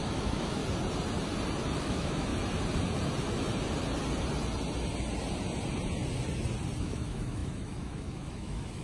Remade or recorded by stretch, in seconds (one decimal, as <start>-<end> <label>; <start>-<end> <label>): 0.0-0.6 remade; 0.6-1.8 recorded; 1.8-2.3 remade; 2.3-6.8 recorded; 6.8-8.8 remade